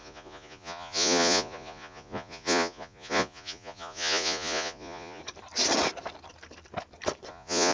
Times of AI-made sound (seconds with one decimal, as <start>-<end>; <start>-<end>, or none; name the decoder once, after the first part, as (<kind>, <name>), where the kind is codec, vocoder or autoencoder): 0.0-5.2 (vocoder, Vocos); 7.3-7.7